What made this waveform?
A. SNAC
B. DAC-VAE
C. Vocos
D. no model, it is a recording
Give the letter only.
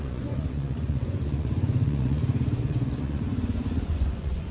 C